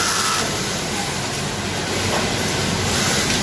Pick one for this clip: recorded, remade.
recorded